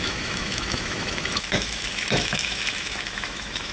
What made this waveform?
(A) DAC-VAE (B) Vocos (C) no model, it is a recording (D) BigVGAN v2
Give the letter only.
A